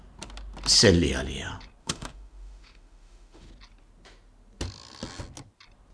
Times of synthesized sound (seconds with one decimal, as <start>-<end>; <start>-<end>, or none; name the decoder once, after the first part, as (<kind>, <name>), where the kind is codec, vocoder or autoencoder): 1.8-3.5 (autoencoder, DAC-VAE)